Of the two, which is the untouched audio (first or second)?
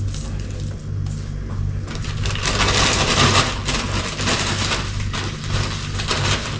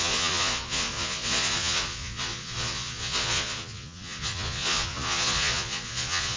first